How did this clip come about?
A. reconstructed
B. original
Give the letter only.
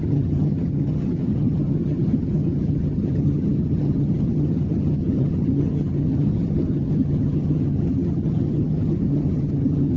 A